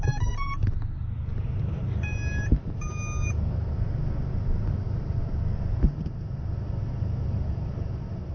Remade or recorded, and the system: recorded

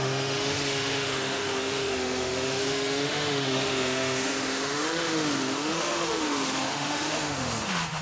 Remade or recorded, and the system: remade, autoencoder, DAC-VAE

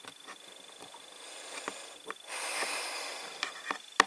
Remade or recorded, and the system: recorded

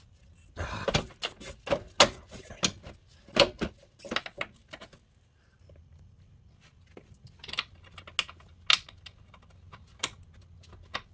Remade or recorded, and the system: recorded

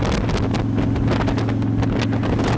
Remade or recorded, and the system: recorded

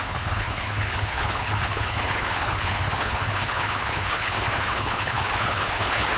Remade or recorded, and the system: remade, codec, HILCodec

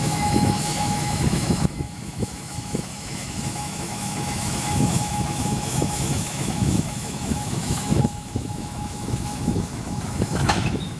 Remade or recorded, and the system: remade, autoencoder, DAC-VAE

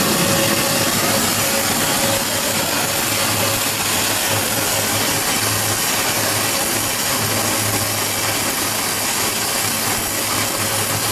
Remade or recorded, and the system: recorded